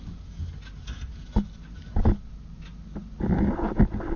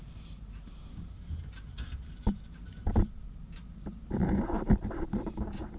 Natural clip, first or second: first